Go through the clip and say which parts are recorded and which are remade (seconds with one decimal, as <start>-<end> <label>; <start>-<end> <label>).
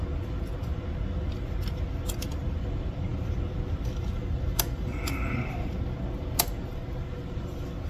0.0-7.9 recorded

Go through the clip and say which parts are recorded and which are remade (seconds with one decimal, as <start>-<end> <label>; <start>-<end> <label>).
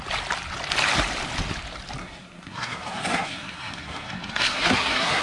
0.0-2.0 recorded; 2.0-5.2 remade